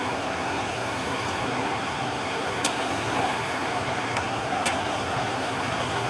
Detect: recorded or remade remade